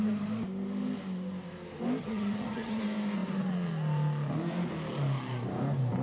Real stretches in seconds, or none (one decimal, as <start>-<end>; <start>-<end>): 0.0-2.0; 2.8-6.0